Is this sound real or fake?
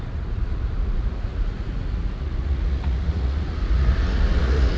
fake